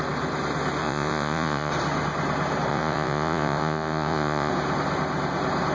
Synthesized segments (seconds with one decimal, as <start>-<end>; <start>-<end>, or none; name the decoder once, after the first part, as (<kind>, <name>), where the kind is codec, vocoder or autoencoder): 0.8-1.7 (vocoder, Vocos); 2.7-4.5